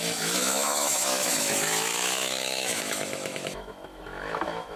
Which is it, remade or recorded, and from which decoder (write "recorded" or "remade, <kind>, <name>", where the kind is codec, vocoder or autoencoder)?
remade, autoencoder, DAC-VAE